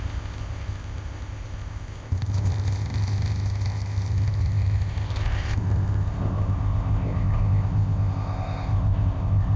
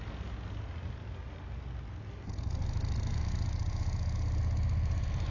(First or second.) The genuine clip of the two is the second